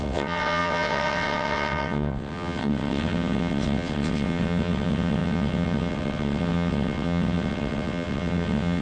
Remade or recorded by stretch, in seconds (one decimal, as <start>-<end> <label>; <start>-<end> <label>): 0.0-8.8 remade